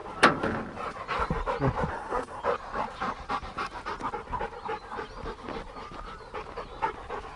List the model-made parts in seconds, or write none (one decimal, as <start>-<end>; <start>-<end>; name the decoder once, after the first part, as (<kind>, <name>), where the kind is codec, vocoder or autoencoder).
1.9-2.4 (codec, SNAC)